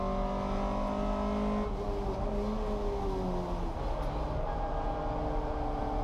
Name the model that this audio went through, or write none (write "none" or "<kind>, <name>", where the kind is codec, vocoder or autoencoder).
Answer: none